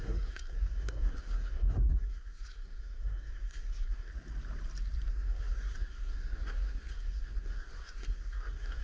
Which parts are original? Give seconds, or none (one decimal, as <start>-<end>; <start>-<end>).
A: 4.1-5.1